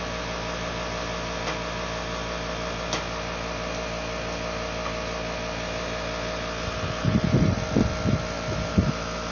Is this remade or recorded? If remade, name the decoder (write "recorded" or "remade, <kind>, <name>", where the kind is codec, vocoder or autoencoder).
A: recorded